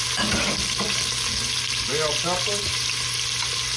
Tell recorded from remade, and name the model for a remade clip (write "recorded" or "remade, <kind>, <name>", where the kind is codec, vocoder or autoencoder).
recorded